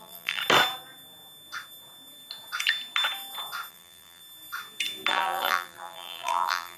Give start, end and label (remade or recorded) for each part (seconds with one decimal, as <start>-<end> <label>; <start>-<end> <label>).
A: 0.0-0.4 remade; 0.4-3.7 recorded; 3.7-4.2 remade; 4.2-5.1 recorded; 5.1-6.8 remade